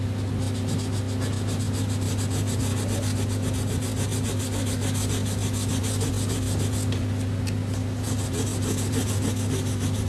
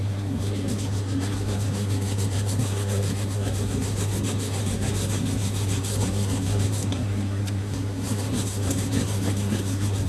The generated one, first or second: second